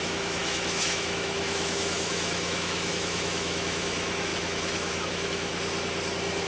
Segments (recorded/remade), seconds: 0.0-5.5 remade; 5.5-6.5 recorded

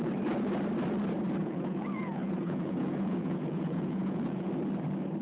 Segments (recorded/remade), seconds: 0.0-1.4 recorded; 1.4-4.5 remade; 4.5-5.2 recorded

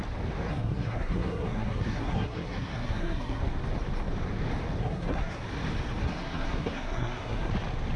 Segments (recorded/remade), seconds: 0.0-0.5 recorded; 0.5-3.4 remade; 3.4-4.8 recorded; 4.8-5.4 remade; 5.4-6.0 recorded; 6.0-7.5 remade; 7.5-8.0 recorded

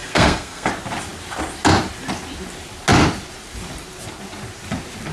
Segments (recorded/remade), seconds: 0.0-0.7 remade; 0.7-5.1 recorded